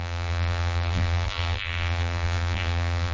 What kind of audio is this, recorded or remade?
remade